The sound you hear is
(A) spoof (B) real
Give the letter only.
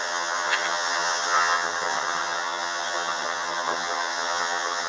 A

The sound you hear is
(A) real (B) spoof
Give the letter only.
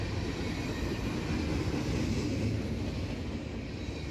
A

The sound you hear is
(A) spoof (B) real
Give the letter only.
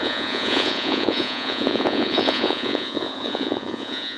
A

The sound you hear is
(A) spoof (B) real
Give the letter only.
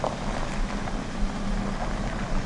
B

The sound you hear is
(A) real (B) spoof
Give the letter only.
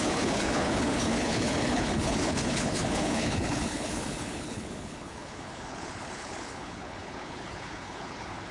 B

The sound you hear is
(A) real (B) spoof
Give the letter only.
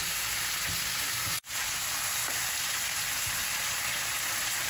B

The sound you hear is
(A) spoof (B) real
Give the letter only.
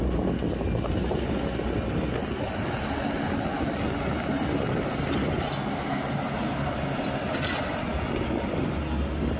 B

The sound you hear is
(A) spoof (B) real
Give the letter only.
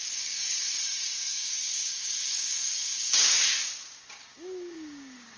A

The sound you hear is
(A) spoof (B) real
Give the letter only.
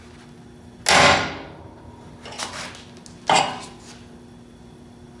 B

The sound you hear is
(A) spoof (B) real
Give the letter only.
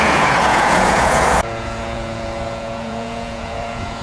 A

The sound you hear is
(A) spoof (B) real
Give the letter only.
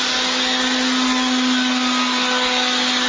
B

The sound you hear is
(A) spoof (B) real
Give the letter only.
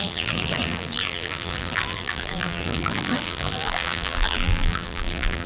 A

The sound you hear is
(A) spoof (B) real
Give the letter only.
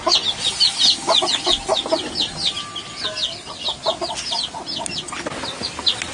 B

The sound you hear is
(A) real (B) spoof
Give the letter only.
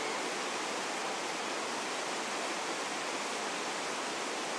A